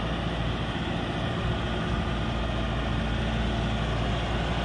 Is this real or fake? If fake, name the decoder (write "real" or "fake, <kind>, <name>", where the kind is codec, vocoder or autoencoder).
real